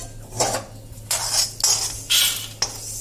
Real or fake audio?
real